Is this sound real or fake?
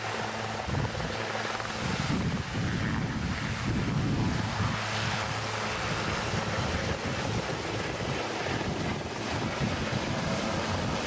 real